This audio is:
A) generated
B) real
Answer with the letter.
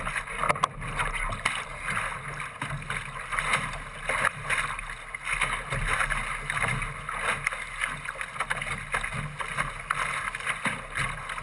B